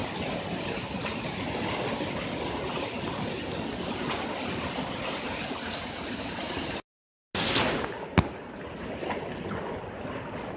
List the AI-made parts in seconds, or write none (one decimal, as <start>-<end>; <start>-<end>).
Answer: none